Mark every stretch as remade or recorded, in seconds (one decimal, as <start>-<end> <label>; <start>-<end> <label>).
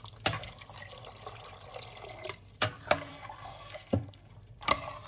0.0-3.1 recorded; 3.1-4.3 remade; 4.3-5.1 recorded